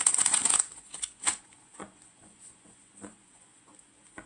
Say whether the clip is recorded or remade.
remade